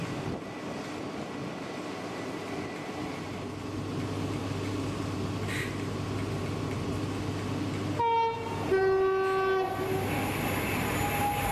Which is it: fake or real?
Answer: real